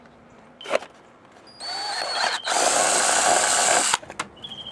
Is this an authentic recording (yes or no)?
yes